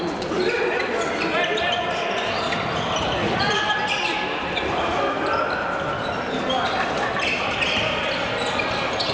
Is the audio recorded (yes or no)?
yes